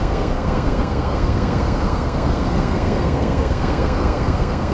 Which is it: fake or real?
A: fake